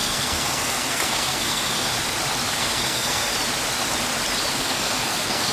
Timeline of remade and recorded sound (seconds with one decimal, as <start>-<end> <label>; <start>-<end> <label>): 0.0-1.9 remade; 1.9-2.5 recorded; 2.5-3.3 remade; 3.3-4.5 recorded; 4.5-5.5 remade

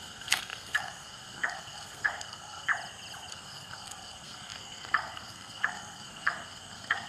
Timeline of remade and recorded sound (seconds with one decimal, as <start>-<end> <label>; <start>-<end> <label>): 0.0-2.7 remade; 2.7-3.3 recorded; 3.3-7.1 remade

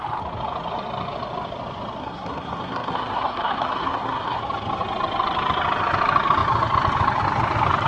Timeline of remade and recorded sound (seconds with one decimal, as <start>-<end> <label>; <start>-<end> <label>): 0.0-2.0 recorded; 2.0-4.4 remade; 4.4-7.9 recorded

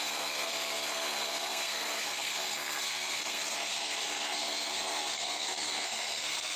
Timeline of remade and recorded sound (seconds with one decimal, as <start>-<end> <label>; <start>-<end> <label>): 0.0-6.6 remade

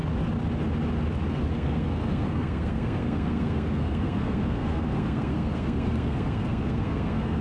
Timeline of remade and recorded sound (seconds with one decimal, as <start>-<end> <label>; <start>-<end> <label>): 0.0-1.3 recorded; 1.3-7.4 remade

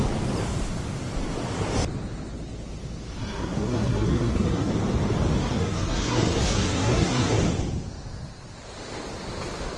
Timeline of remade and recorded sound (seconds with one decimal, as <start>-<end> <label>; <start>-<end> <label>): 0.0-3.2 recorded; 3.2-4.7 remade; 4.7-5.4 recorded; 5.4-7.4 remade; 7.4-9.8 recorded

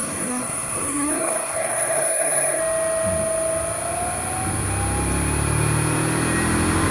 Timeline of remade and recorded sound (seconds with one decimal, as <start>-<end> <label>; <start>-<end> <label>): 0.0-2.6 remade; 2.6-6.9 recorded